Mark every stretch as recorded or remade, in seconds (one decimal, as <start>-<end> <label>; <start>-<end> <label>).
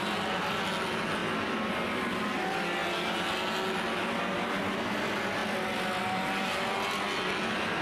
0.0-7.8 recorded